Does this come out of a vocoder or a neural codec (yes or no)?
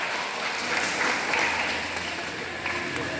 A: no